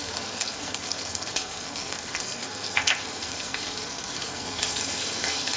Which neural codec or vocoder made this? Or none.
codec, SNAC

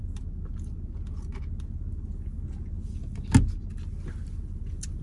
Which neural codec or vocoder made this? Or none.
none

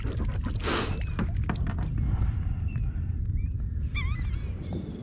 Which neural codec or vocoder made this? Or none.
none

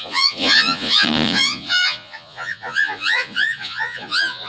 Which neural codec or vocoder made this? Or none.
vocoder, Vocos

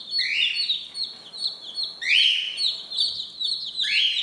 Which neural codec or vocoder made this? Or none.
none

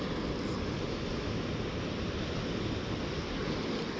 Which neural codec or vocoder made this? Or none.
none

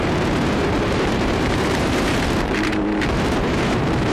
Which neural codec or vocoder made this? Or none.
vocoder, BigVGAN v2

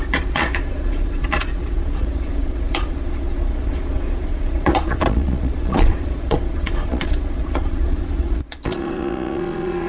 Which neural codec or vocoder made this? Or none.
vocoder, Vocos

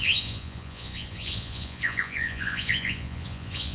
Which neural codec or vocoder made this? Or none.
vocoder, Vocos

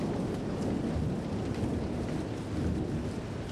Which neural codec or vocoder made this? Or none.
none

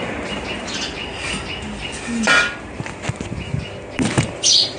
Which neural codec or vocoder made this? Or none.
none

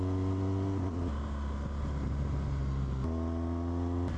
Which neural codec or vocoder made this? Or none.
none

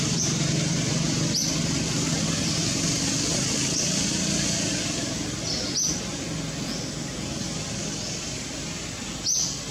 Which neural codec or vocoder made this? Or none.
none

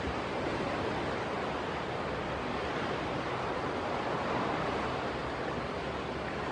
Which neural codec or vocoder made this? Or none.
none